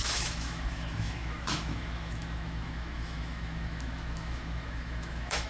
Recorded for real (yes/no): no